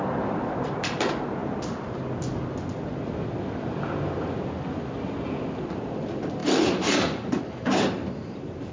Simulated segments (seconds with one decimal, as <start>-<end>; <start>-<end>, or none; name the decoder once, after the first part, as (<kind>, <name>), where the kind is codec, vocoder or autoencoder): 0.0-1.4 (vocoder, BigVGAN v2); 6.0-8.7